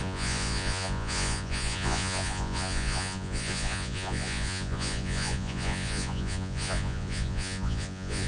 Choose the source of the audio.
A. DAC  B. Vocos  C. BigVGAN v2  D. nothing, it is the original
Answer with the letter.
B